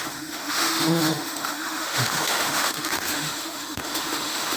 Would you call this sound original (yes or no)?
no